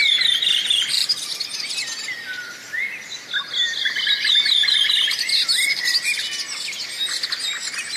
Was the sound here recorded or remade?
recorded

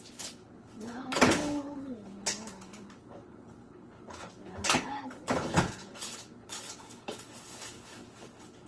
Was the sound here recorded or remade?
remade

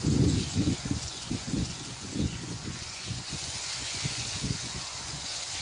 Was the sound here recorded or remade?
remade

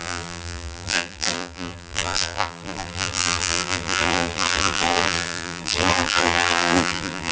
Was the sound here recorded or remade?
remade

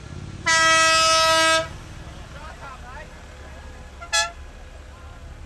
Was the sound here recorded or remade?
recorded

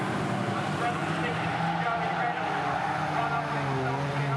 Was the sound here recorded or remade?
recorded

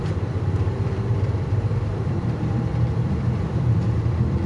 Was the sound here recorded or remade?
remade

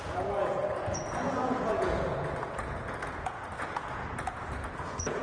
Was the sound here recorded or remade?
remade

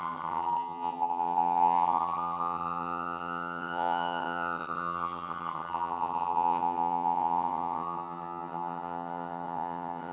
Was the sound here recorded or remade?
remade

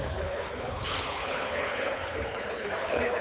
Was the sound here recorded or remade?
remade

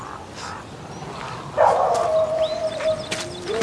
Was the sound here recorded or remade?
recorded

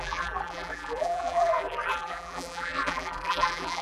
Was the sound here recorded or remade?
remade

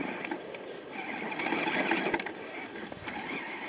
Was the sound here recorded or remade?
recorded